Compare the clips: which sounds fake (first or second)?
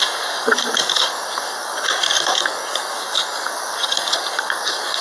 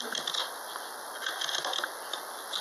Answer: first